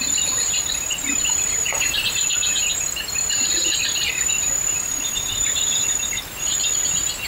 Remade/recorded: remade